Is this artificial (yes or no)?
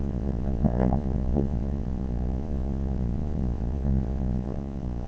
yes